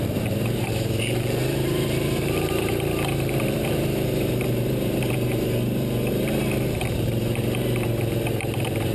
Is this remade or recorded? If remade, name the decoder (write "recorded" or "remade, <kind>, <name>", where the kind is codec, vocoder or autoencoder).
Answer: remade, vocoder, BigVGAN v2